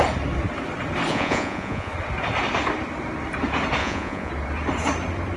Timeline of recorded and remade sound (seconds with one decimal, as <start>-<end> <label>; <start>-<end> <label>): 0.0-1.1 recorded; 1.1-1.9 remade; 1.9-3.8 recorded; 3.8-4.3 remade; 4.3-5.4 recorded